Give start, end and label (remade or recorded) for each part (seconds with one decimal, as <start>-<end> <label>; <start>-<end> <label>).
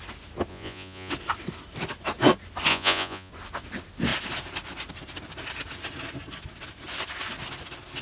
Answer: 0.0-0.5 recorded; 0.5-1.1 remade; 1.1-2.7 recorded; 2.7-3.3 remade; 3.3-8.0 recorded